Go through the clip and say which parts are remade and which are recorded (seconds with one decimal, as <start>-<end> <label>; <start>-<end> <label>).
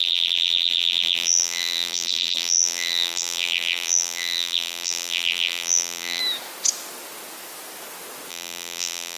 0.0-6.2 remade; 6.2-8.3 recorded; 8.3-9.2 remade